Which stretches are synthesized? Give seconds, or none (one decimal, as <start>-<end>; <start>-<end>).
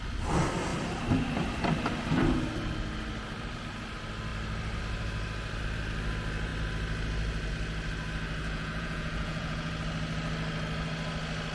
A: 8.4-9.7